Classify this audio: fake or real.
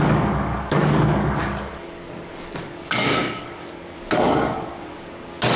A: fake